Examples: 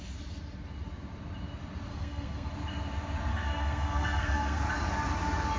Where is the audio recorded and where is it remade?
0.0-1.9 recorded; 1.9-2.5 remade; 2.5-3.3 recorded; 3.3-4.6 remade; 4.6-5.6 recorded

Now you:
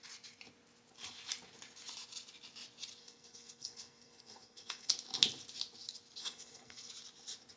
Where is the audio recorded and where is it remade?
0.0-3.0 recorded; 3.0-4.9 remade; 4.9-6.2 recorded; 6.2-6.9 remade; 6.9-7.6 recorded

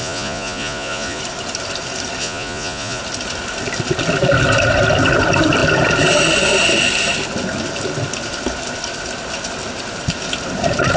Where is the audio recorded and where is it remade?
0.0-1.2 remade; 1.2-2.2 recorded; 2.2-3.0 remade; 3.0-11.0 recorded

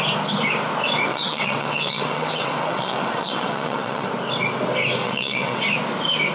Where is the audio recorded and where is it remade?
0.0-1.1 recorded; 1.1-4.1 remade; 4.1-5.0 recorded; 5.0-5.6 remade; 5.6-6.3 recorded